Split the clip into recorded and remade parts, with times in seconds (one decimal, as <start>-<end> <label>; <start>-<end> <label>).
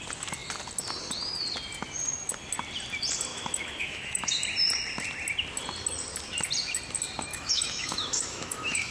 0.0-3.3 recorded; 3.3-4.4 remade; 4.4-7.3 recorded; 7.3-8.9 remade